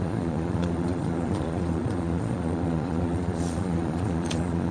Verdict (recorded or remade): remade